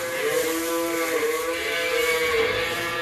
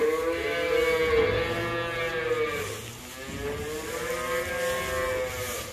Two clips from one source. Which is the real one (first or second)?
second